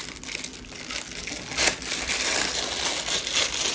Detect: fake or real real